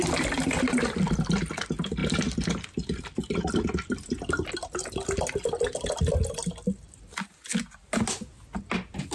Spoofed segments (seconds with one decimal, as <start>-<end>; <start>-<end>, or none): none